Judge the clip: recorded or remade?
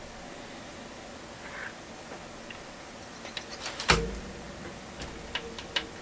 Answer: recorded